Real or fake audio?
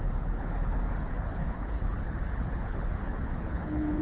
fake